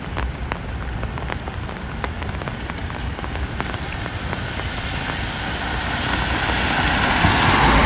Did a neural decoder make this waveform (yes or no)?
no